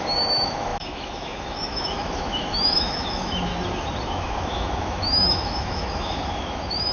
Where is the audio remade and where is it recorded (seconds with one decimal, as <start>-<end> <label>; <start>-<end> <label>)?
0.0-3.5 remade; 3.5-4.1 recorded; 4.1-6.9 remade